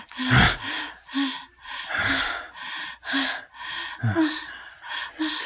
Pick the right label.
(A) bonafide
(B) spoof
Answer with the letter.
A